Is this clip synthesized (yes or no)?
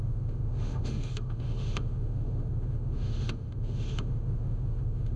yes